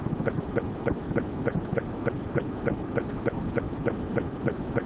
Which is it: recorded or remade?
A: recorded